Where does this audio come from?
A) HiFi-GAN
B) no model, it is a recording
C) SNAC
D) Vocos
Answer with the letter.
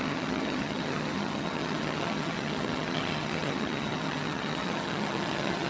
A